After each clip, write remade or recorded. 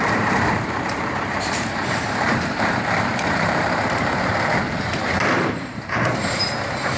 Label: remade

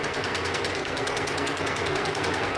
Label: remade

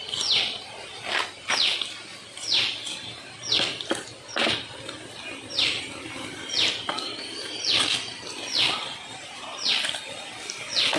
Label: recorded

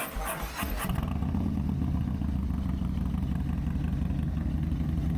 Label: recorded